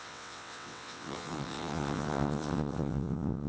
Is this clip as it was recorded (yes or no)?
no